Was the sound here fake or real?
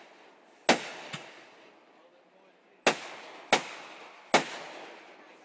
real